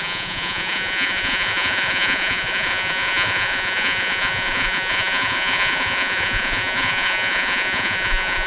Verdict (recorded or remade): remade